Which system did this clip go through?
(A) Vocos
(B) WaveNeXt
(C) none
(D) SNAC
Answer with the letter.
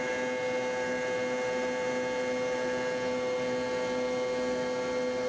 C